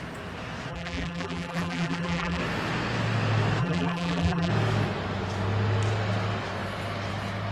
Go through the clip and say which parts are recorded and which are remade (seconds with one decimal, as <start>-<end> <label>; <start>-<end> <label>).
0.0-0.7 recorded; 0.7-2.4 remade; 2.4-3.6 recorded; 3.6-4.5 remade; 4.5-7.5 recorded